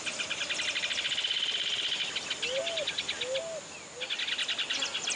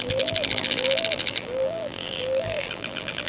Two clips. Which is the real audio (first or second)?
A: first